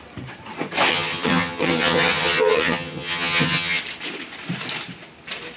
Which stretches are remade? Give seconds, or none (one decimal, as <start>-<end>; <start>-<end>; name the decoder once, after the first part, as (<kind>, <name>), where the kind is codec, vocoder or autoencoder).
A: 0.9-3.8 (vocoder, HiFi-GAN)